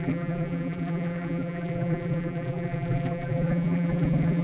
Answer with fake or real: fake